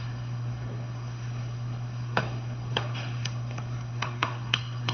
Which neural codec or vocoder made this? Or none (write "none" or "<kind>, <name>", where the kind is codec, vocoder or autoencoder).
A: codec, SNAC